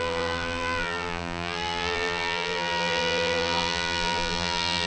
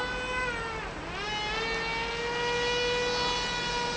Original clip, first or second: second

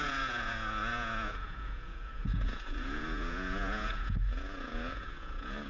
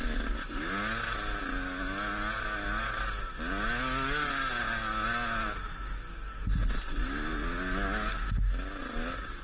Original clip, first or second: second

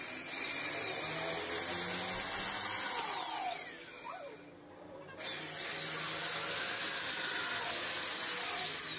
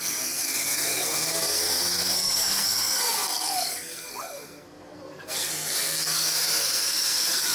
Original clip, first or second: first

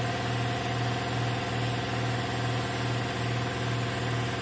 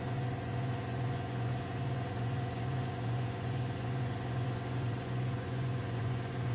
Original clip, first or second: first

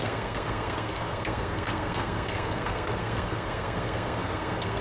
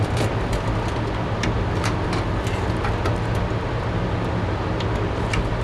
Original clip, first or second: second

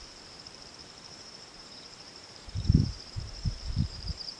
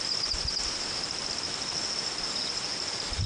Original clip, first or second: second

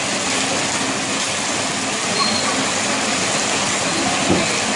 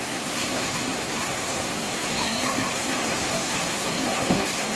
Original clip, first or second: first